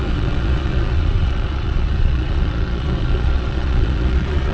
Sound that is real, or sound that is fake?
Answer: fake